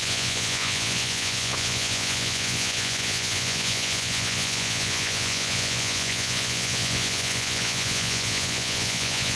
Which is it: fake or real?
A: fake